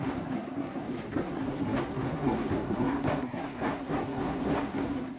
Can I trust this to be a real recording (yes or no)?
no